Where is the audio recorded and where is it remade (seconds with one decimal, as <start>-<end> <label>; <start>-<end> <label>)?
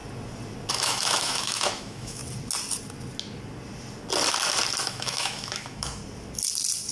0.0-0.7 recorded; 0.7-2.2 remade; 2.2-4.8 recorded; 4.8-6.0 remade; 6.0-6.9 recorded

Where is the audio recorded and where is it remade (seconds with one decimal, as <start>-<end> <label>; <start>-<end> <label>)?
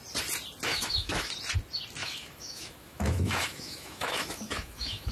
0.0-0.7 recorded; 0.7-1.3 remade; 1.3-2.0 recorded; 2.0-5.1 remade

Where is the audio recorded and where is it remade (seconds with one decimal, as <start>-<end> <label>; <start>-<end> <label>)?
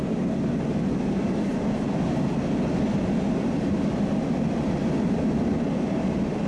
0.0-6.5 recorded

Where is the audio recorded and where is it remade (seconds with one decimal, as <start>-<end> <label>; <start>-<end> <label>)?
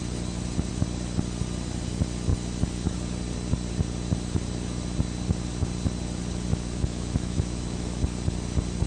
0.0-6.5 recorded; 6.5-8.0 remade; 8.0-8.9 recorded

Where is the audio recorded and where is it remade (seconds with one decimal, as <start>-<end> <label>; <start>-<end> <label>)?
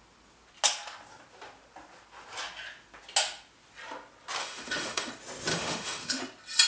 0.0-4.4 recorded; 4.4-5.1 remade; 5.1-5.5 recorded; 5.5-6.2 remade; 6.2-6.7 recorded